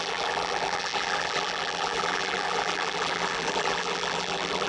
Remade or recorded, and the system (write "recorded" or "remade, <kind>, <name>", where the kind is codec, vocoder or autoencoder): remade, vocoder, BigVGAN v2